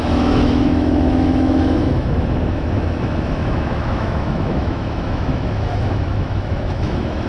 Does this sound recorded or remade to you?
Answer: remade